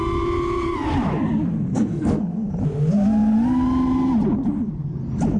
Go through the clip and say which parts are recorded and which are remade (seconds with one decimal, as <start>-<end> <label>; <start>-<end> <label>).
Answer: 0.0-1.7 recorded; 1.7-2.5 remade; 2.5-5.4 recorded